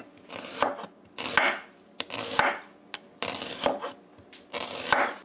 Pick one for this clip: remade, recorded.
recorded